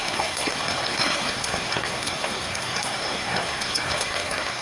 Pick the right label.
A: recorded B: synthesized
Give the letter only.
B